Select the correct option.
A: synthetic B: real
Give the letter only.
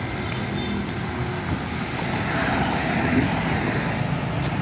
B